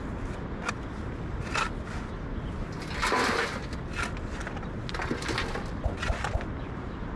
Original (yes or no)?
yes